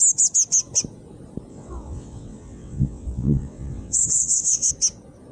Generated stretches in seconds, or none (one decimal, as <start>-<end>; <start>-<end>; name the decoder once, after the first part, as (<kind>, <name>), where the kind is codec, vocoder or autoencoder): 1.5-4.7 (vocoder, WaveNeXt)